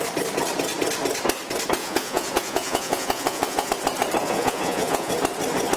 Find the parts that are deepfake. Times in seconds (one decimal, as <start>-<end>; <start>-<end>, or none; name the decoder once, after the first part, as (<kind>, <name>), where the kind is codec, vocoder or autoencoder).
1.8-3.7 (vocoder, Vocos); 4.2-5.1